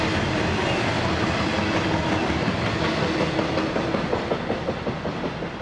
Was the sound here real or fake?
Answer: real